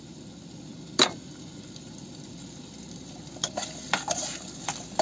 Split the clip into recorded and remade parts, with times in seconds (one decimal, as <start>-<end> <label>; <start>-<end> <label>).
0.0-5.0 remade